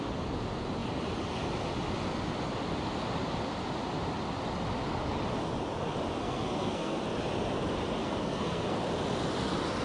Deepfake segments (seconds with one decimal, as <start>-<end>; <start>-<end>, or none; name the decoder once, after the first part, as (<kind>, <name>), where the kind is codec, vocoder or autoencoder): 6.2-7.0 (codec, SNAC); 8.0-8.8